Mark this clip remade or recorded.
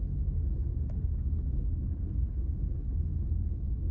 recorded